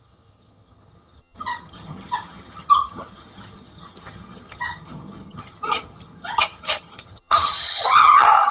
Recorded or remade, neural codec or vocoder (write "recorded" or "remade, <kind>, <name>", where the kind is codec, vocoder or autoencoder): remade, vocoder, HiFi-GAN